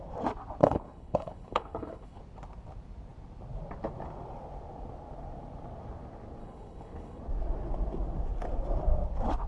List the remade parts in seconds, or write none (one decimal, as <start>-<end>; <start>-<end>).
0.6-2.2; 6.4-7.2